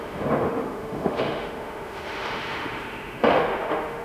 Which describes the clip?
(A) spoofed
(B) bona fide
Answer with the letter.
A